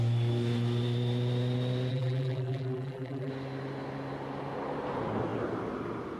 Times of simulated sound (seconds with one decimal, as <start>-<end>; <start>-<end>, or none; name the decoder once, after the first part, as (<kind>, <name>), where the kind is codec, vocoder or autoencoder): 1.9-3.3 (vocoder, BigVGAN v2)